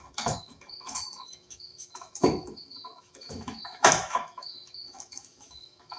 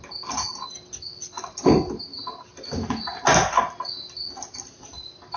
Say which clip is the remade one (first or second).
first